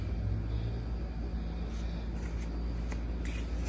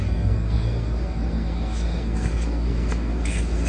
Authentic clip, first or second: first